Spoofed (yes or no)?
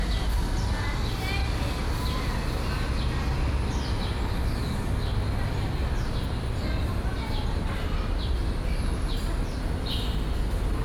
no